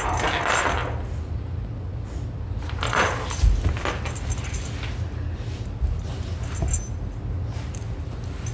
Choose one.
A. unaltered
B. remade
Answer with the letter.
A